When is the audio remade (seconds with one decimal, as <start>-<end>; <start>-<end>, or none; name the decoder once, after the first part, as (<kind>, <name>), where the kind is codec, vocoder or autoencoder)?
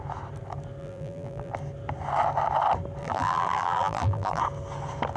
0.8-1.5 (vocoder, BigVGAN v2); 3.0-4.4